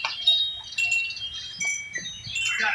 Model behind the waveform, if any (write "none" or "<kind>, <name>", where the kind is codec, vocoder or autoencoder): none